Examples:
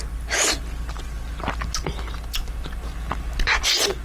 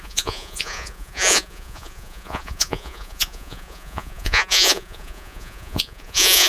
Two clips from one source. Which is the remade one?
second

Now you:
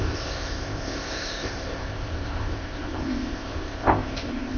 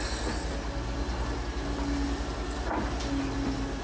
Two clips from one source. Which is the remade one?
first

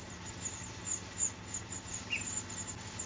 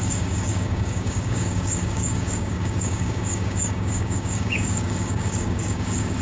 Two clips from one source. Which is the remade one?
second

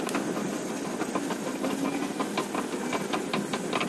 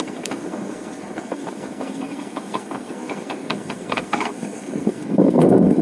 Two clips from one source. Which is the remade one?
second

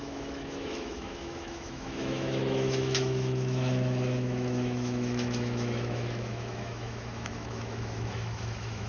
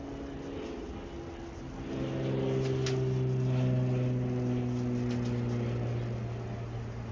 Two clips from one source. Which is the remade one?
first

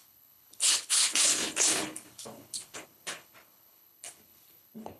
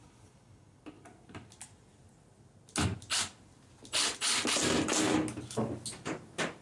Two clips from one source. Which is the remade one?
first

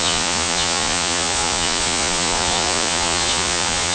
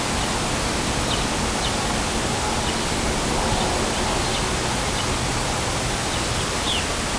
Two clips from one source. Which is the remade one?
first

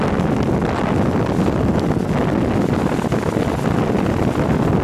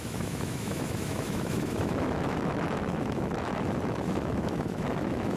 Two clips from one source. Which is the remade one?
second